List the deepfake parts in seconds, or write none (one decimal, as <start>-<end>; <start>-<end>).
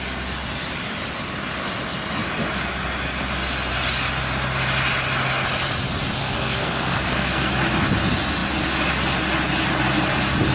6.2-7.5